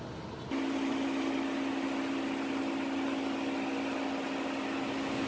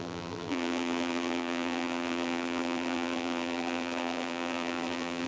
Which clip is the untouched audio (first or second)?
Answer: first